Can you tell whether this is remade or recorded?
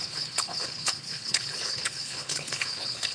remade